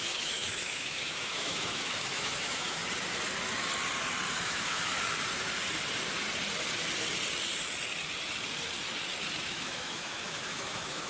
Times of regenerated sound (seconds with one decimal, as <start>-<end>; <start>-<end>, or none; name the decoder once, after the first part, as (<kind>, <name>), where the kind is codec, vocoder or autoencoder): 0.0-2.8 (autoencoder, DAC-VAE); 4.4-4.9; 9.4-11.1